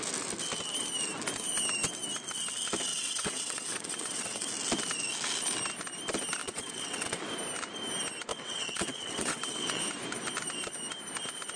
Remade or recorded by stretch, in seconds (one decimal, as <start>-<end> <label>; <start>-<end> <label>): 0.0-2.9 recorded; 2.9-4.5 remade; 4.5-6.4 recorded; 6.4-7.2 remade; 7.2-8.3 recorded; 8.3-9.8 remade; 9.8-11.6 recorded